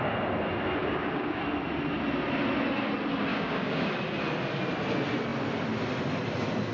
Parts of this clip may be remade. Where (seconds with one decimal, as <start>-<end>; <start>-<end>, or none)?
0.8-1.4; 3.3-3.9